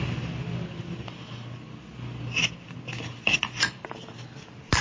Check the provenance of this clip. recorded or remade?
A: recorded